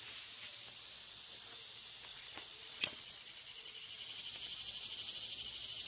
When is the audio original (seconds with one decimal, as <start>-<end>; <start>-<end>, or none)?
0.0-2.1; 3.8-5.9